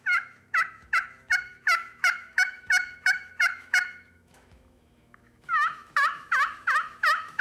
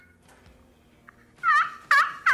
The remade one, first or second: first